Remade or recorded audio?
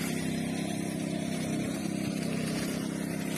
recorded